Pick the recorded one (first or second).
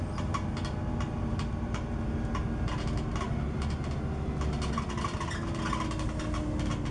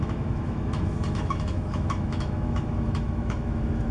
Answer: first